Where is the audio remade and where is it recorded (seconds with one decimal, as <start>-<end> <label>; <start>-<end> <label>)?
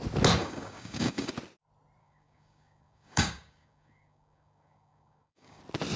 0.0-0.4 recorded; 0.4-1.3 remade; 1.3-2.0 recorded; 2.0-5.6 remade; 5.6-6.0 recorded